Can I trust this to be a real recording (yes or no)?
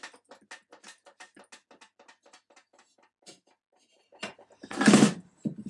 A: yes